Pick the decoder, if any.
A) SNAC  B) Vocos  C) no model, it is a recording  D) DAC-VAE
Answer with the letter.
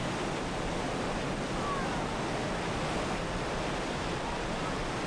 C